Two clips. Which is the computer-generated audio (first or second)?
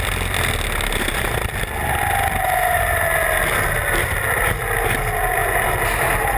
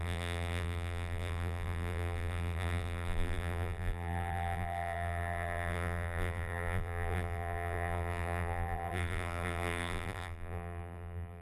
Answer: second